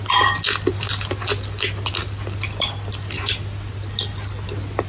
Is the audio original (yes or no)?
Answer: yes